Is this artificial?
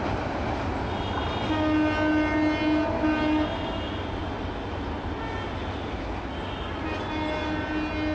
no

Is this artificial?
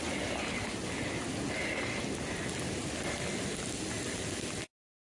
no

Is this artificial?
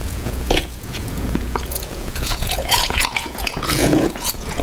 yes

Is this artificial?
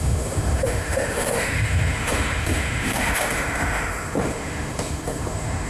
yes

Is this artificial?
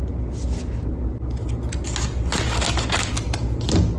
no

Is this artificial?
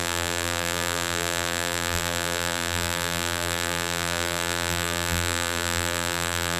yes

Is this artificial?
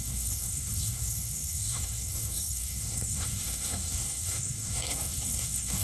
yes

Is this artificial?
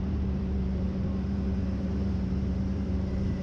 yes